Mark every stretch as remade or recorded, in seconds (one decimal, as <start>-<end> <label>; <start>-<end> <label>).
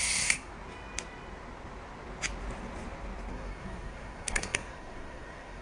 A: 0.0-0.5 remade; 0.5-3.3 recorded; 3.3-5.6 remade